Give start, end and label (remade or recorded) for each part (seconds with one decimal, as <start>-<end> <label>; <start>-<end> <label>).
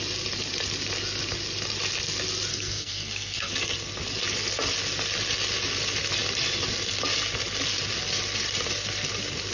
0.0-2.5 recorded; 2.5-3.5 remade; 3.5-9.5 recorded